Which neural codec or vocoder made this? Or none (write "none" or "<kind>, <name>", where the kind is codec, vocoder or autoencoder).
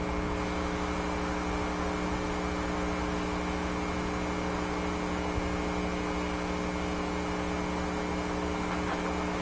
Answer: none